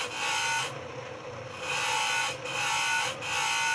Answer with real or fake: real